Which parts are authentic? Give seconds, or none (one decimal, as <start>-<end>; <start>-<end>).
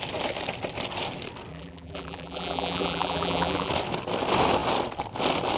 0.0-1.5; 3.7-5.6